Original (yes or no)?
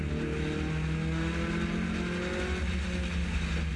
yes